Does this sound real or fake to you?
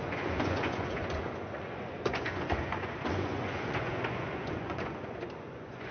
fake